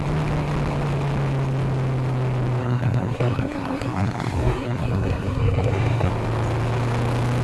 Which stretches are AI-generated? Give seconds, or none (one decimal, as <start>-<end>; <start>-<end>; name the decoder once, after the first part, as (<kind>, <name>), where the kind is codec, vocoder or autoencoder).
2.6-6.1 (codec, SNAC)